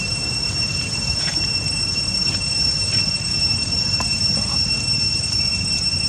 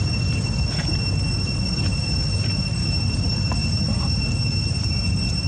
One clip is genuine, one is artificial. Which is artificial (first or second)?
first